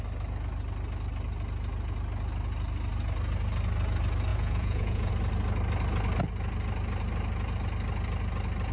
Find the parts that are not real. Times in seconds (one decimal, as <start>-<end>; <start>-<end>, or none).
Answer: 4.3-5.1